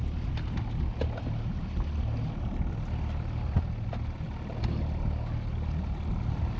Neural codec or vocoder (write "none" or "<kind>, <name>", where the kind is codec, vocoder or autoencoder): none